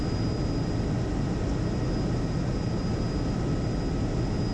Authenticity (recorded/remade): recorded